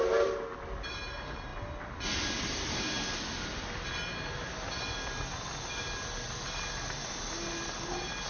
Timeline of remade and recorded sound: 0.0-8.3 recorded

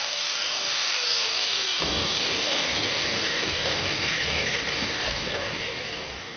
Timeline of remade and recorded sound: 0.0-6.4 remade

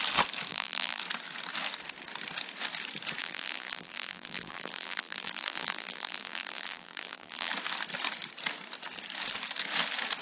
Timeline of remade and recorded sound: 0.0-0.5 recorded; 0.5-1.0 remade; 1.0-3.2 recorded; 3.2-7.5 remade; 7.5-10.2 recorded

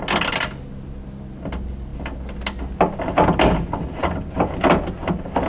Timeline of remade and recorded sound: 0.0-5.5 recorded